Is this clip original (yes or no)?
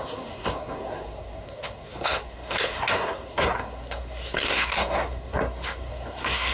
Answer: no